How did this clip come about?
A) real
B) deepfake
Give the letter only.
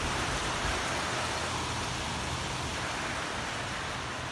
A